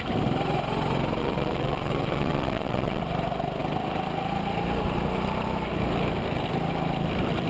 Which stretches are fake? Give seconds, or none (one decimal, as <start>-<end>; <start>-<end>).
1.2-3.0